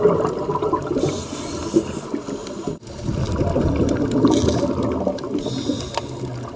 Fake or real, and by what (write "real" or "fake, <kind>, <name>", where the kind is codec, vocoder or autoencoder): real